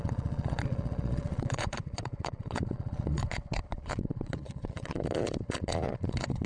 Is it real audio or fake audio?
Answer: fake